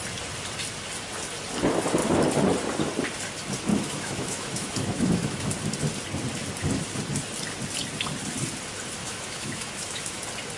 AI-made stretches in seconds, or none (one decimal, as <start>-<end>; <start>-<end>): 3.7-5.5; 9.0-10.2

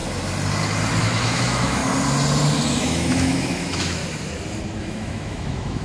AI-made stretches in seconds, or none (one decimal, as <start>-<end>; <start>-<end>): 1.0-1.8; 2.8-4.0; 4.8-5.8